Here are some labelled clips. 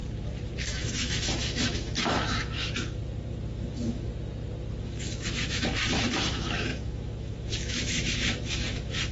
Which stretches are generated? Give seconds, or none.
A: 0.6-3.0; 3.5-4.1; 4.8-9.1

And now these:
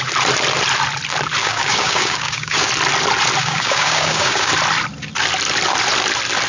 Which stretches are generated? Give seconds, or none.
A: 1.4-2.7; 3.4-4.5

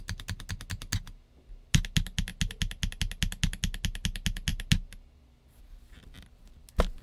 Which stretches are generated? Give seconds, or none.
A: none

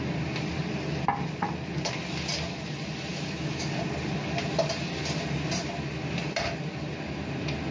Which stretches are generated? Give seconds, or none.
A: 3.1-3.7

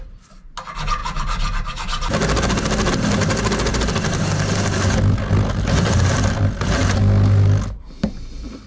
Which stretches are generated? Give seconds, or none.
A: none

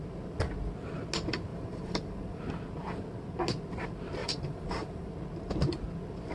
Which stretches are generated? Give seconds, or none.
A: 1.5-2.4; 4.2-5.1

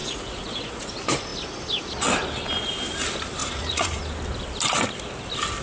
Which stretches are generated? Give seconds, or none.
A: 0.0-0.9; 3.4-4.0